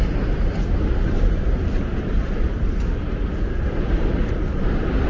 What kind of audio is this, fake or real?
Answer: real